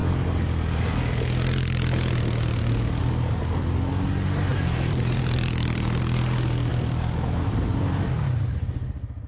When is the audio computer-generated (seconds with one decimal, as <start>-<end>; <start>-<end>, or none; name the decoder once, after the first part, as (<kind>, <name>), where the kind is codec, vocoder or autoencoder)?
4.5-6.0 (vocoder, BigVGAN v2); 6.7-8.1